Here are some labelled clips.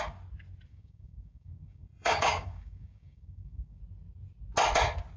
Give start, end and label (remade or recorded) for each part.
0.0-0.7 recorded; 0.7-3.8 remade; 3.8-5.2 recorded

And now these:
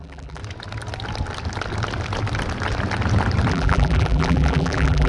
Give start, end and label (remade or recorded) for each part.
0.0-0.4 remade; 0.4-3.5 recorded; 3.5-5.1 remade

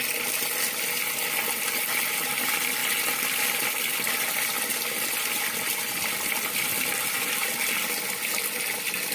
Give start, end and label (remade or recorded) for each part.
0.0-9.1 recorded